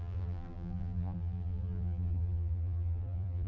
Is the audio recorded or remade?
remade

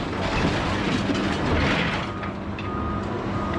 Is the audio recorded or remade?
recorded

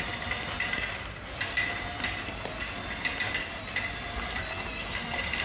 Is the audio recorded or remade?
recorded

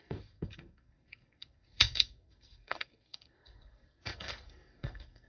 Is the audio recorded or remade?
remade